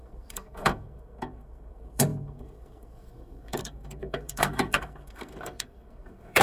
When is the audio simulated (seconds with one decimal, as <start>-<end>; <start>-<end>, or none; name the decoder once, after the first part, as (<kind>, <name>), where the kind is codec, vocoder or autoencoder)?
0.0-6.4 (codec, SNAC)